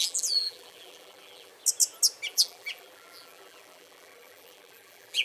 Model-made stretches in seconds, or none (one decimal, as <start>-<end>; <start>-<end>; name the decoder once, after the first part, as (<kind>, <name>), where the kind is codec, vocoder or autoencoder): 0.0-1.5 (vocoder, BigVGAN v2); 2.3-5.2